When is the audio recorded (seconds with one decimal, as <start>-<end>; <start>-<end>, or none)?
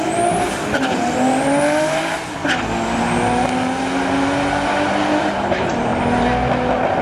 2.4-5.2; 5.9-7.0